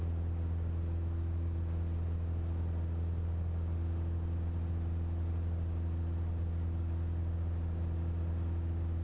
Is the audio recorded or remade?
recorded